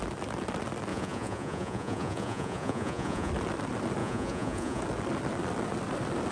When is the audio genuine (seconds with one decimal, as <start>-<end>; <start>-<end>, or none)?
0.0-0.9; 3.3-4.0; 4.8-6.3